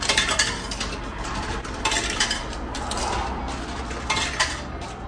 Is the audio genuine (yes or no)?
yes